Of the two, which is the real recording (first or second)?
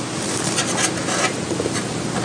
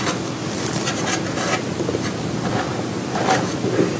first